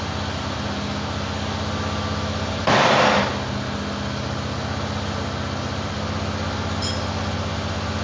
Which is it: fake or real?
real